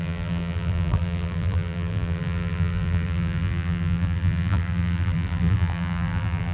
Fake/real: fake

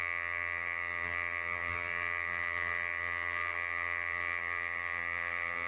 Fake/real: fake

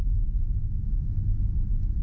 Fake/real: real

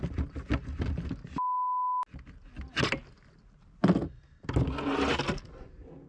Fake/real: real